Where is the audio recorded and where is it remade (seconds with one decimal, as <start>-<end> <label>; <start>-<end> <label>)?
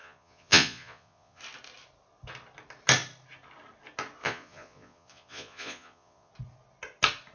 0.0-1.4 remade; 1.4-4.2 recorded; 4.2-6.3 remade; 6.3-7.3 recorded